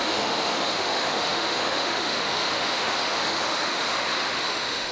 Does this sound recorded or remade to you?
remade